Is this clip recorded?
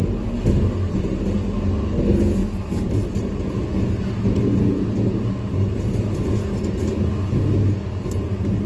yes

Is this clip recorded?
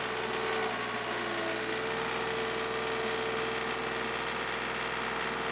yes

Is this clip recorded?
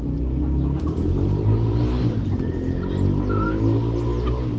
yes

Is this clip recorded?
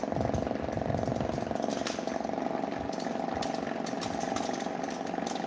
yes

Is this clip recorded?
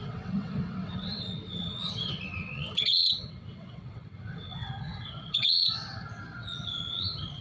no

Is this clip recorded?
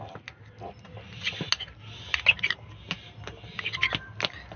yes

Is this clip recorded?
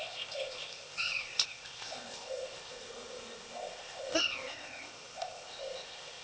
no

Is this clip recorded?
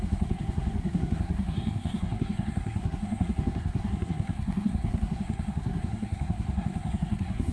no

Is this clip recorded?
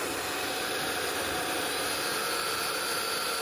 yes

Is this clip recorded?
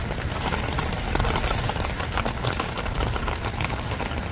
no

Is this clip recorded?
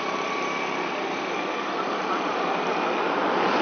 yes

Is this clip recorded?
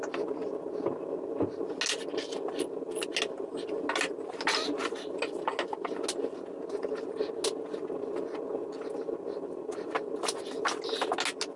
yes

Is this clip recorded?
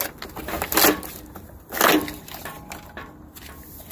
yes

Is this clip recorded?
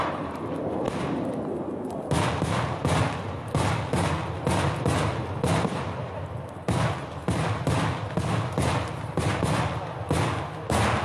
yes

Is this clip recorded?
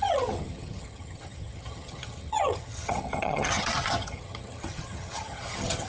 no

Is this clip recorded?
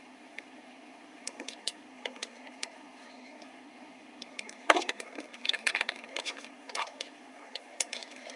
no